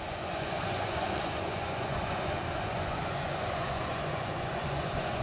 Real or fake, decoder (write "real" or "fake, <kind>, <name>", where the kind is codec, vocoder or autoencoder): fake, vocoder, Vocos